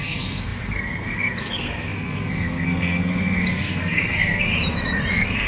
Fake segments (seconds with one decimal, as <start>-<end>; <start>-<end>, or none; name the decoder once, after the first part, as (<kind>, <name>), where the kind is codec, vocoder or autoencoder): 0.0-4.5 (codec, SNAC); 5.1-5.5